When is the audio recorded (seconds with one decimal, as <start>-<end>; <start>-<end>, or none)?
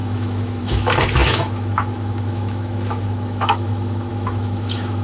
none